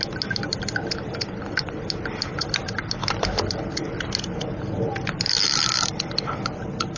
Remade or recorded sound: recorded